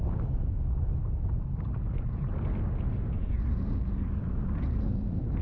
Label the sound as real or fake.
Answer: real